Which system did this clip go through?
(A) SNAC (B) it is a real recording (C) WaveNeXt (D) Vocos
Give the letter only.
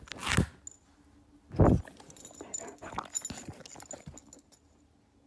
B